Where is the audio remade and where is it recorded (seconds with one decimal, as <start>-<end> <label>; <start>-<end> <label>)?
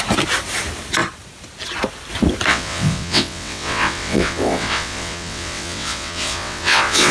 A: 0.0-2.5 recorded; 2.5-7.1 remade